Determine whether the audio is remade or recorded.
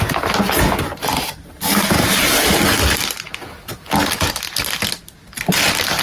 recorded